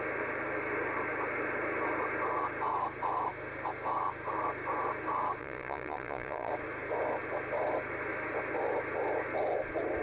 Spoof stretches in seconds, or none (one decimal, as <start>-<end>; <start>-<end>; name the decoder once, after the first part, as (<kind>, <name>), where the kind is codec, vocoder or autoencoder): 5.4-6.5 (vocoder, Vocos)